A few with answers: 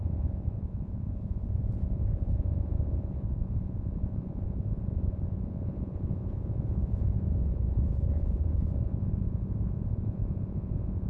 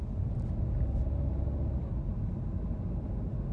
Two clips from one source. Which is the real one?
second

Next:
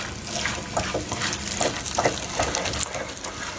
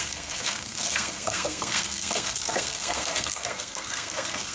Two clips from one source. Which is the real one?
first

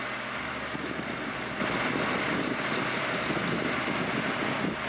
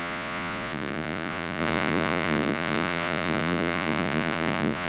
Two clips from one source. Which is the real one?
first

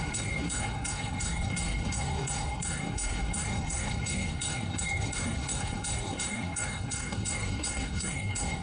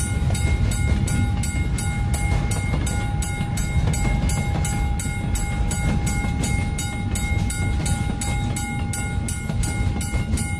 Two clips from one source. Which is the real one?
second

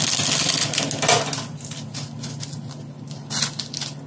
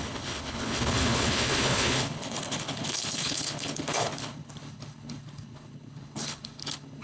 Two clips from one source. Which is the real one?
first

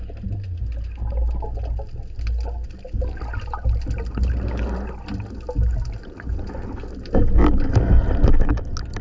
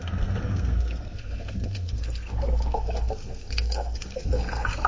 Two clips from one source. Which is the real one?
first